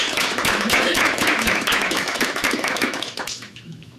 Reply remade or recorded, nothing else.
remade